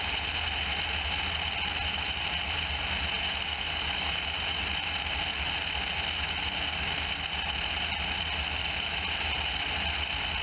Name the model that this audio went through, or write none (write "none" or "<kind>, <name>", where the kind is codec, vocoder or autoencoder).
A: none